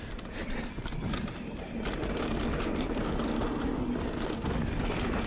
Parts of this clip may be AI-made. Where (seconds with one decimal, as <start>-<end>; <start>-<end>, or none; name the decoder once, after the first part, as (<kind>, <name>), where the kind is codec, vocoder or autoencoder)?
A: none